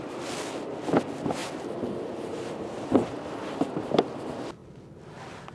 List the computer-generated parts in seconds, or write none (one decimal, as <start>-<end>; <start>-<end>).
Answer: none